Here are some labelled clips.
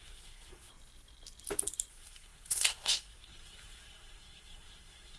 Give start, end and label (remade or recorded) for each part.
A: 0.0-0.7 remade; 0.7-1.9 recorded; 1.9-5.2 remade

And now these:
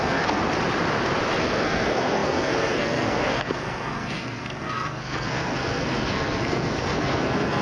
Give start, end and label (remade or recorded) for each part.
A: 0.0-0.4 remade; 0.4-1.4 recorded; 1.4-7.6 remade

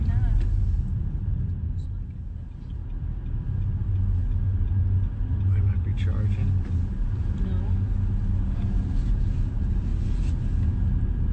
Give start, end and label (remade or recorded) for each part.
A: 0.0-11.3 recorded